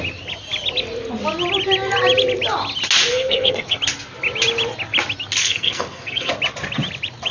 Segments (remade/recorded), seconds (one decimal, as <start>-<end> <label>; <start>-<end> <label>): 0.0-3.1 recorded; 3.1-3.8 remade; 3.8-5.4 recorded; 5.4-6.3 remade; 6.3-7.3 recorded